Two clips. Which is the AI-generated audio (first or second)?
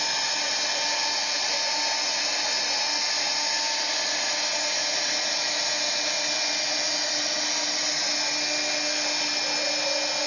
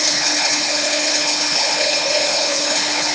second